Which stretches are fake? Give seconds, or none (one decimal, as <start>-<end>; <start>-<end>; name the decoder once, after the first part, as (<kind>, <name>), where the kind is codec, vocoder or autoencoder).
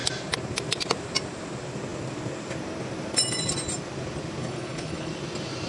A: 4.4-5.1 (codec, HILCodec)